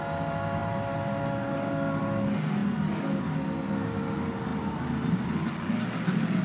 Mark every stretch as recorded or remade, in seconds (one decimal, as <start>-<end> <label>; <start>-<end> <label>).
0.0-6.4 recorded